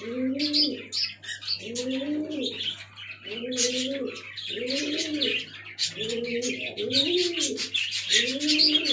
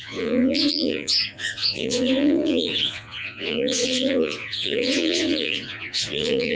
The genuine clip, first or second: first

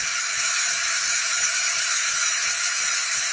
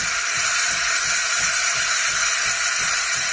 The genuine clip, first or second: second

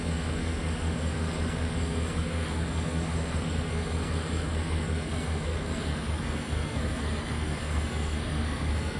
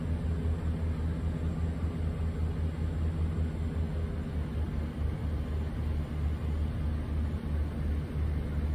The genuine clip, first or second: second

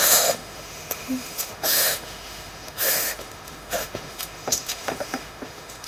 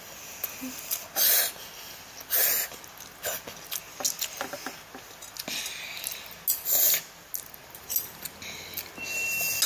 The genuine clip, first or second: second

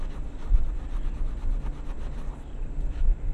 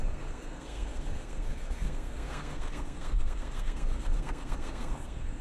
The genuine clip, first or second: first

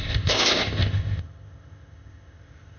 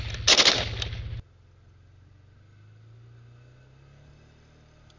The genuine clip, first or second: second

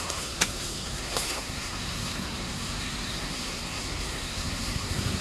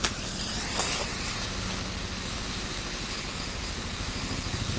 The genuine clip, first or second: second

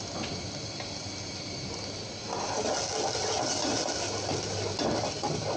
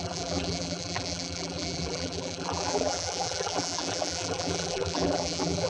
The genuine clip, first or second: first